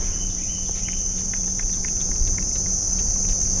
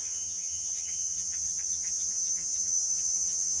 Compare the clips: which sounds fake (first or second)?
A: second